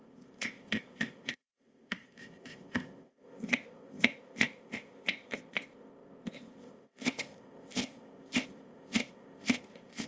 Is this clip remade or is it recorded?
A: remade